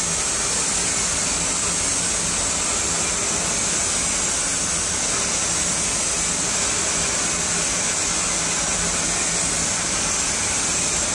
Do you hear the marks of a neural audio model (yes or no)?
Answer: no